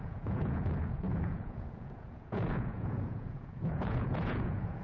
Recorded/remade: remade